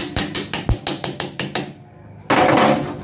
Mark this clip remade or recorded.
recorded